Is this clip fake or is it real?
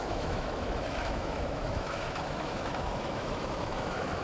fake